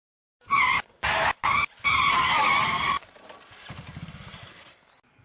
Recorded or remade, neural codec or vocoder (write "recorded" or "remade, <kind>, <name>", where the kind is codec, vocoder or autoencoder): recorded